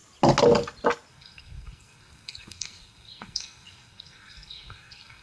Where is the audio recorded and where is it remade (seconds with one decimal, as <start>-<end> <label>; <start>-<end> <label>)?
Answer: 0.0-1.1 recorded; 1.1-5.2 remade